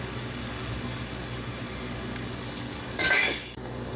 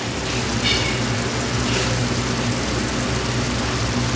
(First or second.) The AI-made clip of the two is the first